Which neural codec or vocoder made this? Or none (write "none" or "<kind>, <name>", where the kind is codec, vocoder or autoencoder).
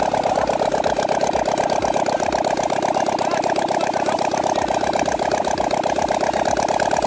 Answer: none